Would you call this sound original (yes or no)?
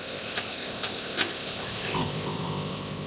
no